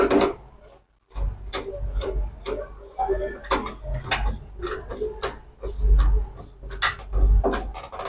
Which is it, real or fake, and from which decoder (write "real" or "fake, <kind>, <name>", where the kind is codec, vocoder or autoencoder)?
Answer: real